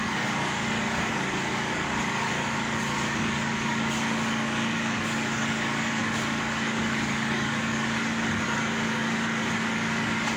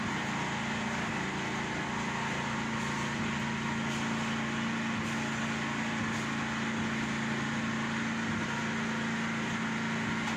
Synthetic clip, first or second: first